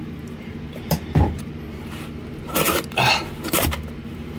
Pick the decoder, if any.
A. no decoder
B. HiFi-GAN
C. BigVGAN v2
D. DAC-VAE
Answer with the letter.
C